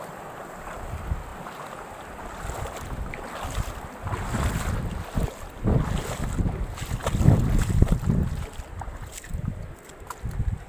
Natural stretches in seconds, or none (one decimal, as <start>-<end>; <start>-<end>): 0.0-10.7